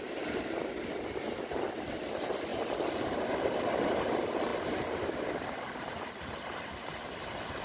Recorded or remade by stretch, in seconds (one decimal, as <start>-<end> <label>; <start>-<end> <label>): 0.0-4.5 remade; 4.5-5.0 recorded; 5.0-7.6 remade